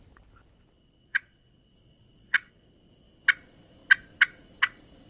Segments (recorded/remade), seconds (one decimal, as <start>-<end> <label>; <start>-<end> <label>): 0.0-0.8 recorded; 0.8-2.5 remade; 2.5-5.1 recorded